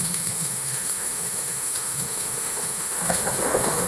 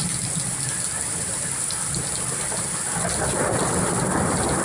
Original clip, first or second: second